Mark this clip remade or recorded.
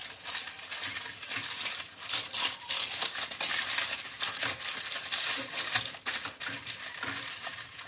recorded